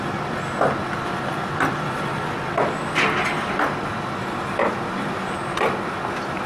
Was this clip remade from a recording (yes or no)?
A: no